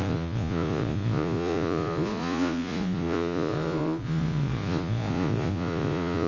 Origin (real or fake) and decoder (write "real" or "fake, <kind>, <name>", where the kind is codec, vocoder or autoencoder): fake, vocoder, Vocos